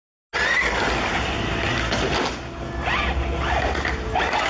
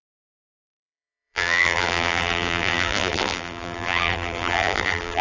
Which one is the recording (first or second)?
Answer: first